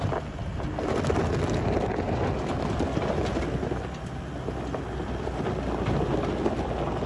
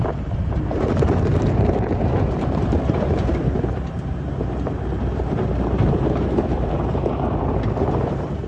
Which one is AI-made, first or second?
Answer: second